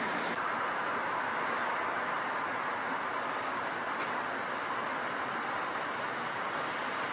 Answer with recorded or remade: recorded